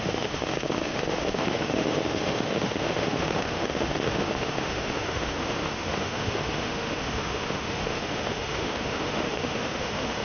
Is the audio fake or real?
fake